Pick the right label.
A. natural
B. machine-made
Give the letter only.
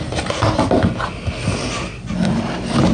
A